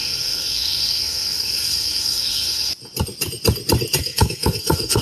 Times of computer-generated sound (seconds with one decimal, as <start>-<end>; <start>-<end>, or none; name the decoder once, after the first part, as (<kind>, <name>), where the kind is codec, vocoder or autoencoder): 0.0-2.7 (codec, SNAC); 4.0-5.0